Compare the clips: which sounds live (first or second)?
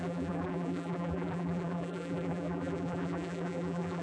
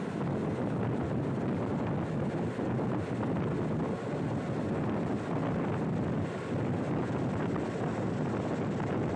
second